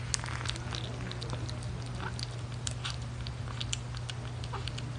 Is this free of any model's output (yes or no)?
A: yes